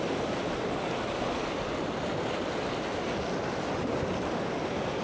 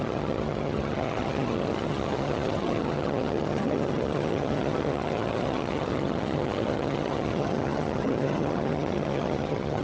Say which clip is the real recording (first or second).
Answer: first